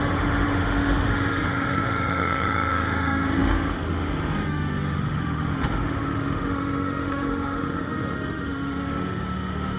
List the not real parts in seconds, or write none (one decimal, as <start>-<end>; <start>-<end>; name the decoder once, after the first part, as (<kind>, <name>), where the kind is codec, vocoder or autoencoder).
0.0-9.8 (autoencoder, DAC-VAE)